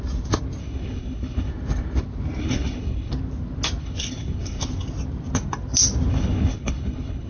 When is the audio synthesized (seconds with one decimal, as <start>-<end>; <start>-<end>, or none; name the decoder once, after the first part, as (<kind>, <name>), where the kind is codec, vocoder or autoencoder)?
0.6-1.5 (codec, HILCodec); 2.4-3.1; 3.8-4.7; 6.1-7.3